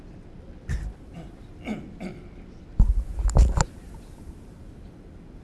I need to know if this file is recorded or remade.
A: recorded